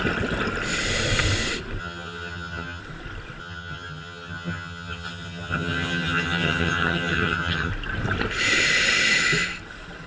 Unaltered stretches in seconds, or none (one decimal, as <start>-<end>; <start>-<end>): 0.0-1.8; 2.8-3.4; 7.7-10.1

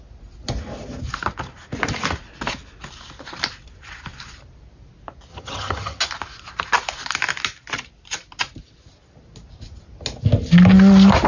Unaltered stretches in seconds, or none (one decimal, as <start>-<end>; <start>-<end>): 0.0-5.3; 6.0-11.3